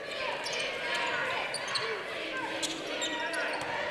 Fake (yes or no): no